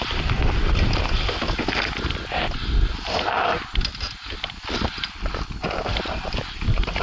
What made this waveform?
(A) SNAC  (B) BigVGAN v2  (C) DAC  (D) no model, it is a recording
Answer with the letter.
D